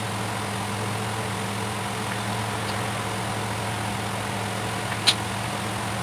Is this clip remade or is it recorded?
recorded